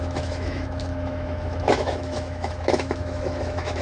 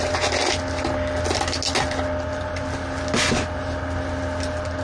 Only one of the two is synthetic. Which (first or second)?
first